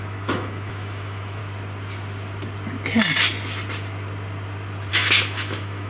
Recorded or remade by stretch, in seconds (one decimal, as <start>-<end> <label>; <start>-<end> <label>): 0.0-1.4 remade; 1.4-4.9 recorded; 4.9-5.9 remade